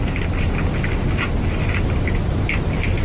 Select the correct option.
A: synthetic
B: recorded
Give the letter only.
B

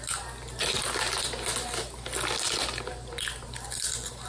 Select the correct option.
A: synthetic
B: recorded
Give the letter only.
B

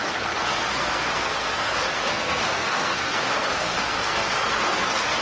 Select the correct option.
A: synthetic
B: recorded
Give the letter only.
A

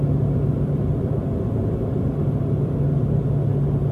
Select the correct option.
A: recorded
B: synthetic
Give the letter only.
A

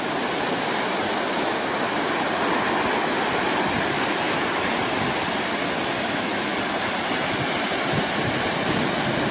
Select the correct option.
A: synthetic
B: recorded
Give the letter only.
B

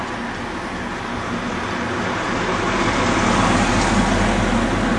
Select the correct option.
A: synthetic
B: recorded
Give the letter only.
B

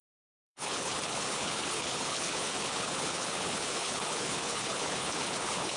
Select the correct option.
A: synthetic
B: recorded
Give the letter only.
A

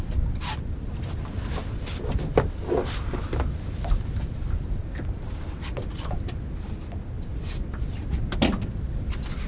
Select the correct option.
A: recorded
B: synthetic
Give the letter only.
A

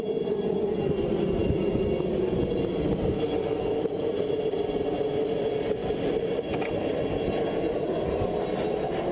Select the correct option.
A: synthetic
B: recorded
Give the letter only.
B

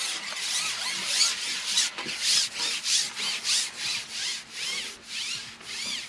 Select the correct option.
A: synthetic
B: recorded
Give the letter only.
B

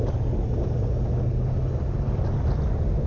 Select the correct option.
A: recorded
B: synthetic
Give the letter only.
A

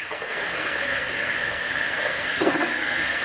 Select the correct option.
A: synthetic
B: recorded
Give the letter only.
A